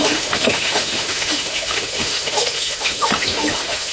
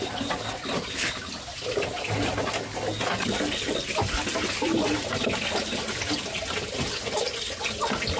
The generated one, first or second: first